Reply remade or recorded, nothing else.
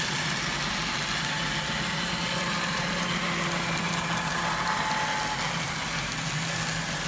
recorded